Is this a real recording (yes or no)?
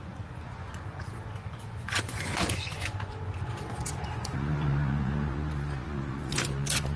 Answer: no